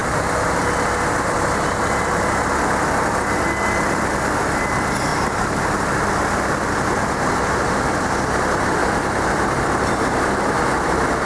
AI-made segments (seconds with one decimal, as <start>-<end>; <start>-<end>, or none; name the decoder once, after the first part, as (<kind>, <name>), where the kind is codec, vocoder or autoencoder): 0.0-0.6 (vocoder, BigVGAN v2); 5.1-5.9; 8.8-10.6